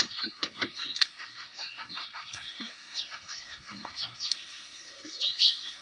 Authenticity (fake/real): fake